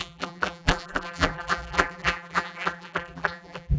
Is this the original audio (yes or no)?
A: no